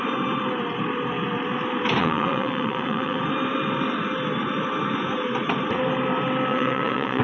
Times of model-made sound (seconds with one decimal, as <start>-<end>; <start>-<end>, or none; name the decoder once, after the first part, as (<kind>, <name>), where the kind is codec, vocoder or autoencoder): 2.0-3.2 (vocoder, WaveNeXt); 6.5-7.2